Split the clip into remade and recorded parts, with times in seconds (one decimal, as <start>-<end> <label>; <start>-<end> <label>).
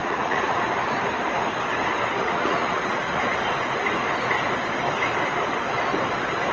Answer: 0.0-0.6 remade; 0.6-2.2 recorded; 2.2-3.2 remade; 3.2-6.5 recorded